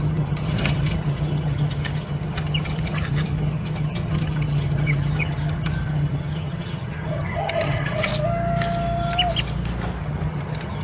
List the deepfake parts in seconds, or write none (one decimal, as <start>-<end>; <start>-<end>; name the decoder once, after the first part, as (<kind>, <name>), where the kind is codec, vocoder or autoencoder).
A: 0.0-8.1 (vocoder, HiFi-GAN); 10.0-10.8